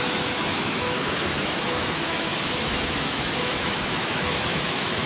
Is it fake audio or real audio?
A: fake